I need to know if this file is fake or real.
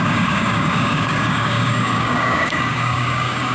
fake